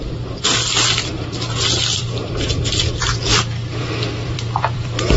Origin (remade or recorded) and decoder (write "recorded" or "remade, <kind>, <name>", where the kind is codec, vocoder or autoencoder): remade, vocoder, BigVGAN v2